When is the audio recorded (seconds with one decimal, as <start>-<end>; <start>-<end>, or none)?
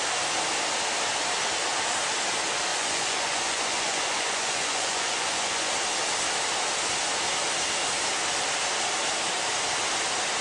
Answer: 0.0-2.7; 5.7-10.4